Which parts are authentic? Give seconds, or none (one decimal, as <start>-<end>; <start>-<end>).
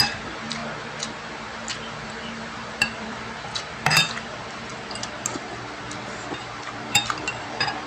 0.6-1.4